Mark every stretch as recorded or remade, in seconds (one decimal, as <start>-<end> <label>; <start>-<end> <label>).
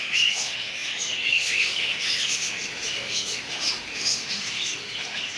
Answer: 0.0-5.4 remade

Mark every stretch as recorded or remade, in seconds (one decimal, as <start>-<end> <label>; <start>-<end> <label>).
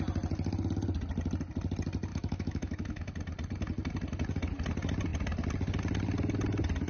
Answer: 0.0-2.1 recorded; 2.1-3.1 remade; 3.1-6.9 recorded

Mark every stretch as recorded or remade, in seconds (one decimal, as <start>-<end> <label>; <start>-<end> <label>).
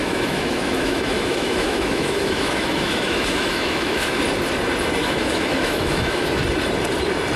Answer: 0.0-4.2 remade; 4.2-5.0 recorded; 5.0-6.4 remade; 6.4-7.4 recorded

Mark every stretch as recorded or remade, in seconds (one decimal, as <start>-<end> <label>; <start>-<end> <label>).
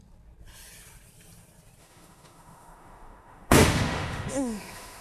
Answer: 0.0-1.8 recorded; 1.8-5.0 remade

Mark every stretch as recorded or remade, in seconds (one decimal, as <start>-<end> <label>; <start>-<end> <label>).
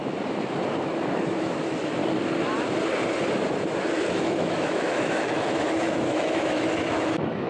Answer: 0.0-1.4 recorded; 1.4-2.0 remade; 2.0-3.9 recorded; 3.9-7.5 remade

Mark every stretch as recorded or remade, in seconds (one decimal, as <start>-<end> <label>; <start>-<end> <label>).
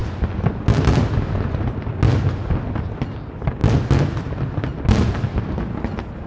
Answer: 0.0-6.3 recorded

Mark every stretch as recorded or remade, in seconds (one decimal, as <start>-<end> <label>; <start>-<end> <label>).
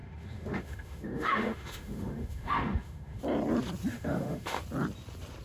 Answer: 0.0-3.2 remade; 3.2-3.9 recorded; 3.9-4.6 remade; 4.6-5.4 recorded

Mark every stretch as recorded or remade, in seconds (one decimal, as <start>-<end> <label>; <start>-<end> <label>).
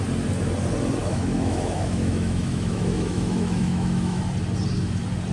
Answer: 0.0-1.0 recorded; 1.0-4.2 remade; 4.2-5.3 recorded